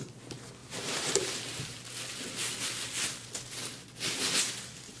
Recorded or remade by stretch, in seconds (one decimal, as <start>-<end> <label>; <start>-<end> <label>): 0.0-0.6 recorded; 0.6-1.8 remade; 1.8-5.0 recorded